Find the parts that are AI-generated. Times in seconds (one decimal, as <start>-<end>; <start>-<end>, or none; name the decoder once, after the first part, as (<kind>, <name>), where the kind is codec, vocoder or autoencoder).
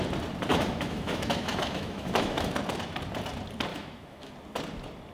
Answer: 0.5-2.5 (autoencoder, DAC-VAE); 3.7-4.3